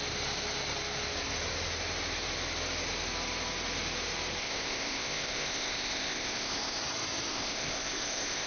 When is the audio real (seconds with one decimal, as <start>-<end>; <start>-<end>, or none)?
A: 0.0-4.4; 6.8-7.3